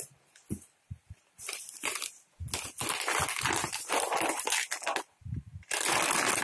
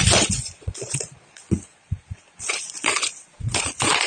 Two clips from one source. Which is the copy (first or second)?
second